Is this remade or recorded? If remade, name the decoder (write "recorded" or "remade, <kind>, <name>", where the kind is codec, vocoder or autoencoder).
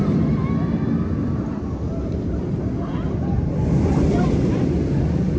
recorded